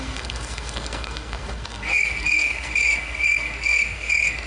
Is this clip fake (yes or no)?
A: yes